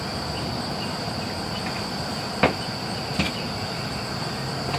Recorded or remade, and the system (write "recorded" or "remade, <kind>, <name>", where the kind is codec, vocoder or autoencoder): remade, vocoder, BigVGAN v2